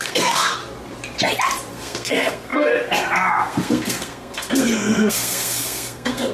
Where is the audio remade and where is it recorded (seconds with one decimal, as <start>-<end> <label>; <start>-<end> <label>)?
0.0-0.6 remade; 0.6-1.7 recorded; 1.7-6.3 remade